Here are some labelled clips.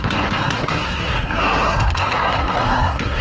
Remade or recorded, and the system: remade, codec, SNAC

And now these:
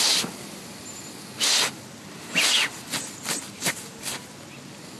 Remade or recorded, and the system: recorded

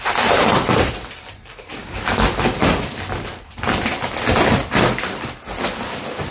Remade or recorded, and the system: remade, vocoder, BigVGAN v2